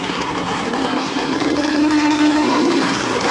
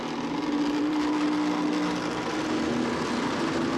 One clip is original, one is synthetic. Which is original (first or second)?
second